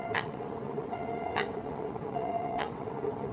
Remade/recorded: remade